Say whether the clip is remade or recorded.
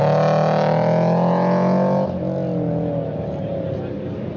recorded